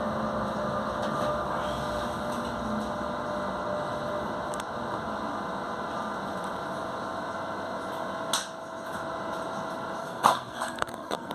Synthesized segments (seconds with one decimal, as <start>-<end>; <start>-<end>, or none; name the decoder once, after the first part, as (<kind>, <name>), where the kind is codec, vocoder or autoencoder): 10.0-11.3 (codec, SNAC)